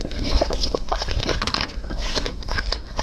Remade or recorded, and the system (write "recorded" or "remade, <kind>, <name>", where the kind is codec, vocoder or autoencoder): remade, codec, SNAC